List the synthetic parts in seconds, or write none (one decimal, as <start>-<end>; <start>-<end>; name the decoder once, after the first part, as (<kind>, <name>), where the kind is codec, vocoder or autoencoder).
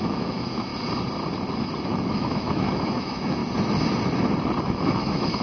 0.0-0.7 (autoencoder, DAC-VAE); 1.8-3.4; 4.6-5.4